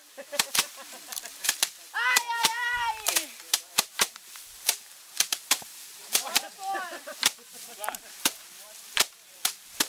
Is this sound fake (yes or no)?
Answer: yes